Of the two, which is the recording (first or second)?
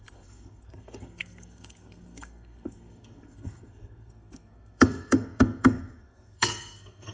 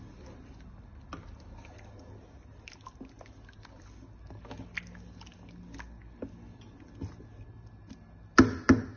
second